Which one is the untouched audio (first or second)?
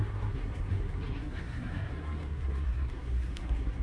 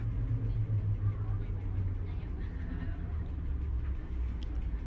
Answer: second